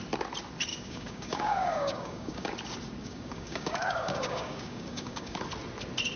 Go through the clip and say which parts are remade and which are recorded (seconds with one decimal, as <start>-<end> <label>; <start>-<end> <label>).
0.0-0.7 recorded; 0.7-2.5 remade; 2.5-3.0 recorded; 3.0-5.4 remade; 5.4-6.2 recorded